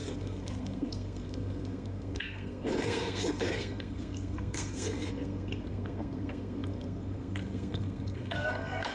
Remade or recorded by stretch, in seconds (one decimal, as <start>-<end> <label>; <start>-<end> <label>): 0.0-8.9 remade